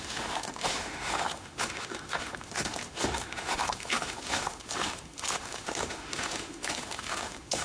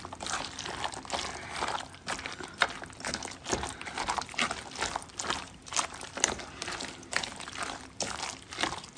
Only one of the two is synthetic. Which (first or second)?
first